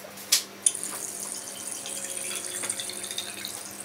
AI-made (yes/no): no